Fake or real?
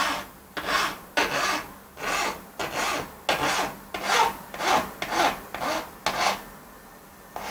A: real